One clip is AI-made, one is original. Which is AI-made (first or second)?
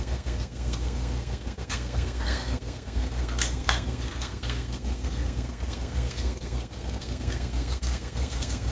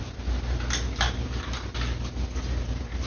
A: first